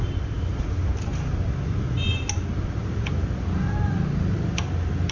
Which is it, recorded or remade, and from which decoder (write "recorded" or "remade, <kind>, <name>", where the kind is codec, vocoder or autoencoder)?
recorded